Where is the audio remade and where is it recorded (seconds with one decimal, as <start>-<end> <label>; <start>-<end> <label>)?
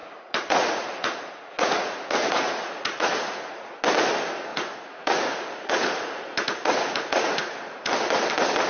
0.0-3.8 remade; 3.8-4.5 recorded; 4.5-7.9 remade; 7.9-8.7 recorded